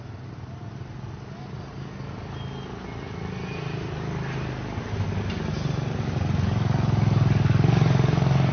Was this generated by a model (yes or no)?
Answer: no